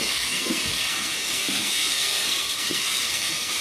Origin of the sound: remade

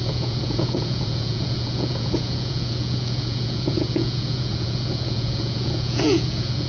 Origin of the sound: remade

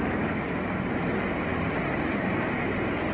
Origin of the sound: recorded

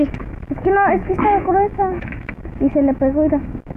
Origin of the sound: remade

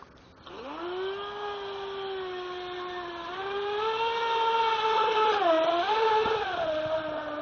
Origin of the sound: recorded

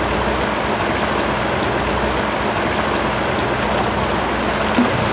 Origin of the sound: recorded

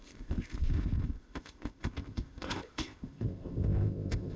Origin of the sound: remade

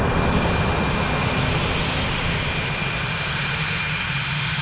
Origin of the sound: recorded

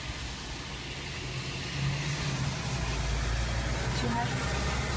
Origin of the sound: recorded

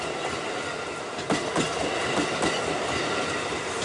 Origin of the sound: recorded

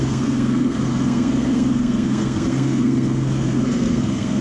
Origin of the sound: remade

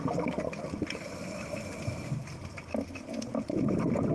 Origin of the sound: recorded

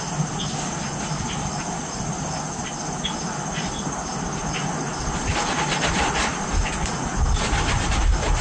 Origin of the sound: recorded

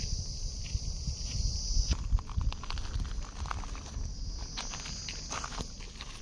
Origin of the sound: recorded